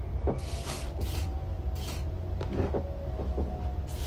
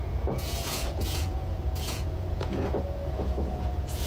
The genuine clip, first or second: first